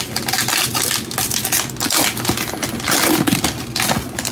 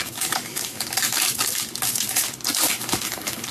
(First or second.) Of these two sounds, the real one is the first